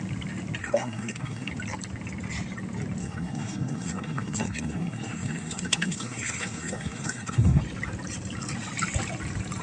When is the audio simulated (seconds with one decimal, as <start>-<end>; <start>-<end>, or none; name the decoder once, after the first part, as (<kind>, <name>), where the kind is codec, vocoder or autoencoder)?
0.6-1.5 (codec, SNAC); 3.0-7.6